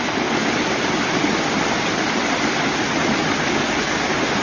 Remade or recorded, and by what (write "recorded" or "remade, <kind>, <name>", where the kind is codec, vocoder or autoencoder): recorded